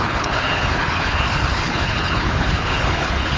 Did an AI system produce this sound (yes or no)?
yes